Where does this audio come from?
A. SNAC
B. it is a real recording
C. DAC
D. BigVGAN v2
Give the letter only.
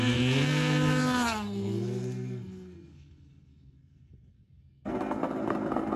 A